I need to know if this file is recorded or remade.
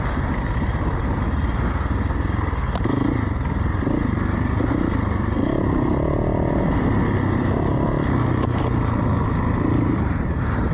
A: recorded